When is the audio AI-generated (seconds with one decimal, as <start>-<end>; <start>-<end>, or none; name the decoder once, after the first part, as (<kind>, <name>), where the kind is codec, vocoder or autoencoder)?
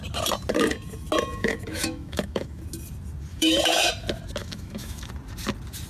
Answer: 1.4-2.6 (autoencoder, DAC-VAE); 3.3-3.9; 4.4-5.1